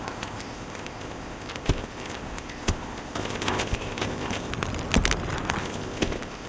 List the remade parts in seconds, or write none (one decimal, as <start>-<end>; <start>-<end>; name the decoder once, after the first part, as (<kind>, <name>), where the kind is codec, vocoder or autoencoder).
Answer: 0.0-4.5 (codec, ZipCodec); 5.6-6.5